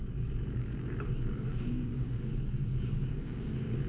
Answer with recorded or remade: remade